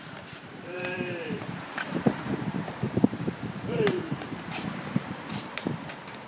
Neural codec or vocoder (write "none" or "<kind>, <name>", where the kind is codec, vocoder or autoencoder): vocoder, BigVGAN v2